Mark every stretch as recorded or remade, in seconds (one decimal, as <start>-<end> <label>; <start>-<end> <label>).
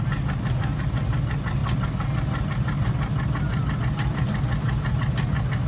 0.0-5.7 recorded